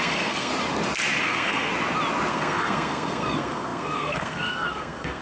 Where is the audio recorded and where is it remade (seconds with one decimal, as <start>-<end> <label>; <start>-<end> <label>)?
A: 0.0-0.5 remade; 0.5-1.2 recorded; 1.2-1.7 remade; 1.7-2.3 recorded; 2.3-5.2 remade